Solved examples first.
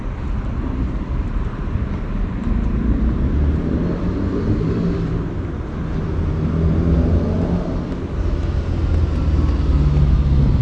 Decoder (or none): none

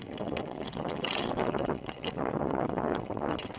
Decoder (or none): vocoder, WaveNeXt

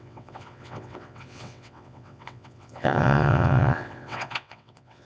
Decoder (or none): vocoder, WaveNeXt